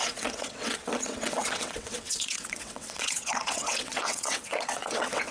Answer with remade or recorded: remade